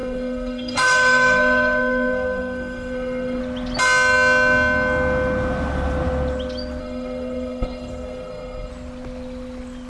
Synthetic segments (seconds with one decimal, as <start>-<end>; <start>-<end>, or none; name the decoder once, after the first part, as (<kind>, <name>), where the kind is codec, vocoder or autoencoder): 0.0-3.4 (codec, SNAC); 6.8-8.7